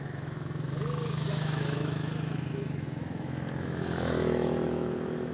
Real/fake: fake